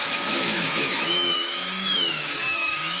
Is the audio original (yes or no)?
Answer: no